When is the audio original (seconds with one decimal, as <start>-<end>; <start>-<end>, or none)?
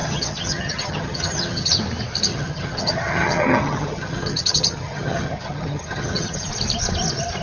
1.7-2.3; 6.5-7.4